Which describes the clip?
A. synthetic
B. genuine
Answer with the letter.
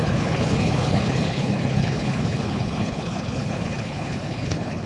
A